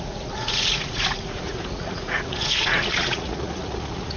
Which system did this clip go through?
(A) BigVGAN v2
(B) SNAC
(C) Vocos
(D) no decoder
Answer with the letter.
C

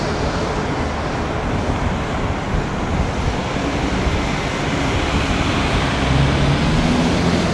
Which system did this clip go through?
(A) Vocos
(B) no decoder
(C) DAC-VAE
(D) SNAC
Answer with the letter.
B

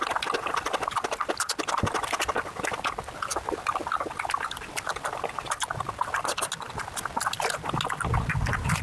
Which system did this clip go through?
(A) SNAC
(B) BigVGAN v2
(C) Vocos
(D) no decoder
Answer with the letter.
D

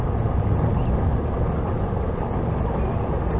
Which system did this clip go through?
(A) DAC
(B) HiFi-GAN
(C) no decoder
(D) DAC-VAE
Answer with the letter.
C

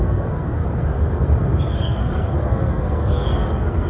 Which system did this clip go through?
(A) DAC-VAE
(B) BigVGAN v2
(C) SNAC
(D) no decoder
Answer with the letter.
C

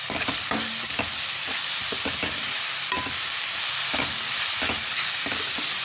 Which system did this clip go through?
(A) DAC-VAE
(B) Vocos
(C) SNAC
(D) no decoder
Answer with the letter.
D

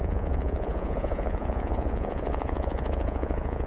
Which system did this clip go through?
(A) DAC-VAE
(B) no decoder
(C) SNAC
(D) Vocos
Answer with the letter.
D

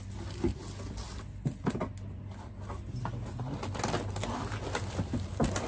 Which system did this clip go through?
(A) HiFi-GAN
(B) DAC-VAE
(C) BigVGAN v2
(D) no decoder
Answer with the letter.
D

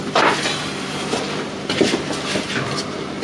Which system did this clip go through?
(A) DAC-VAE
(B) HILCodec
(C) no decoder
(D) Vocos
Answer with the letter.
C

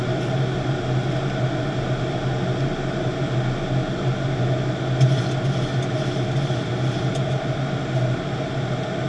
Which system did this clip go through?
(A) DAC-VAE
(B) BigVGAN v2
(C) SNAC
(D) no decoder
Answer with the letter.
D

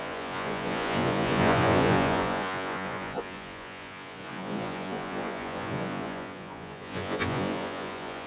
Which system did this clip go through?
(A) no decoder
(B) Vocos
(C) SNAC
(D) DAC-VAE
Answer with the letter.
B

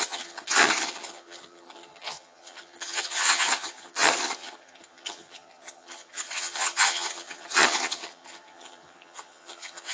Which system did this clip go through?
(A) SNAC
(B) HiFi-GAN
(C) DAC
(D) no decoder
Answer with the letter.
B